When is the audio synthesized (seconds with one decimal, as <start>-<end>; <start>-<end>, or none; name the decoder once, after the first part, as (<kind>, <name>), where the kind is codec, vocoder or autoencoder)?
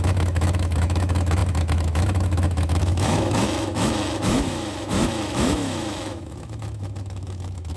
0.0-7.8 (autoencoder, DAC-VAE)